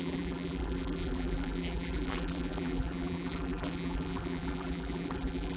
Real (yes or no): no